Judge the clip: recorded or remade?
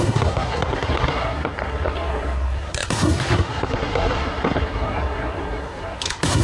remade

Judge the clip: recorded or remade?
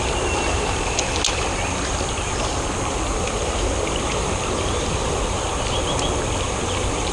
recorded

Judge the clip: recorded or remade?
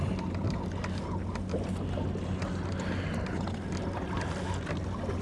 recorded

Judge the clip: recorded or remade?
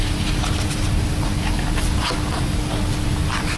recorded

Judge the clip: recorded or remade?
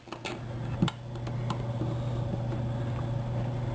recorded